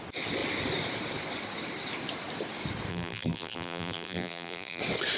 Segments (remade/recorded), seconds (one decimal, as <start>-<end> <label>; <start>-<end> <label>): 0.0-2.9 recorded; 2.9-4.8 remade; 4.8-5.2 recorded